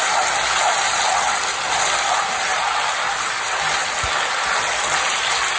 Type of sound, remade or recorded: recorded